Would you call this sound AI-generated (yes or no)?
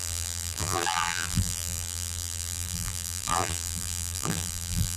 yes